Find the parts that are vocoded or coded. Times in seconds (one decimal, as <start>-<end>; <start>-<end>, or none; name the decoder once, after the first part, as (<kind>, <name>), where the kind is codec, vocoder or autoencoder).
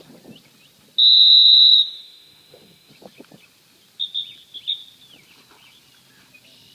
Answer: 1.7-2.9 (autoencoder, DAC-VAE)